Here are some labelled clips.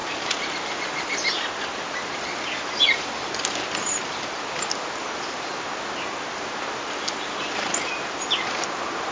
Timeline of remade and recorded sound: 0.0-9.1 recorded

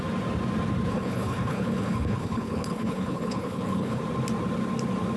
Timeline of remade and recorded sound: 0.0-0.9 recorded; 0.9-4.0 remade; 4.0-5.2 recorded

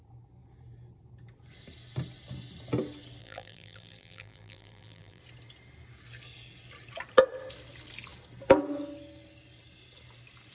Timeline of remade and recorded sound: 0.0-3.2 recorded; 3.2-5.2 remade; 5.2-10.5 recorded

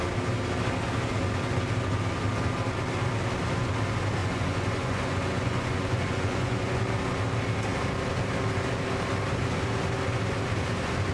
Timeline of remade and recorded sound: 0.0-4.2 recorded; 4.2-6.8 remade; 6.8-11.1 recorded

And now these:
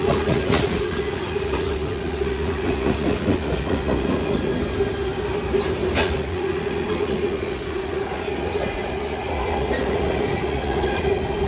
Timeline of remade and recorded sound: 0.0-4.5 remade; 4.5-6.0 recorded; 6.0-11.5 remade